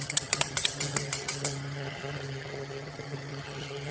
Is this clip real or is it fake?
fake